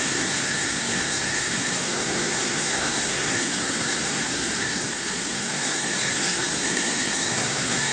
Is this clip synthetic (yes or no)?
yes